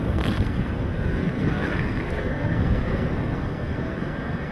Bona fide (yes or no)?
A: no